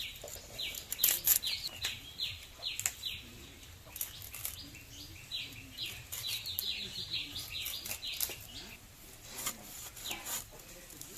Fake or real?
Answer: real